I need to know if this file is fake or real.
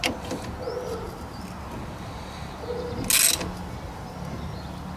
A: real